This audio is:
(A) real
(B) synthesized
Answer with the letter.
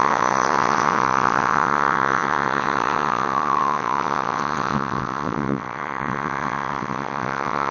B